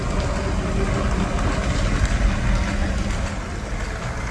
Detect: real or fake real